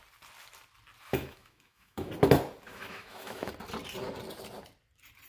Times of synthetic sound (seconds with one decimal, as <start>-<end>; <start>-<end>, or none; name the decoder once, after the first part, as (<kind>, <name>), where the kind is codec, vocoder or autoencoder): 1.1-2.1 (autoencoder, DAC-VAE); 2.7-3.5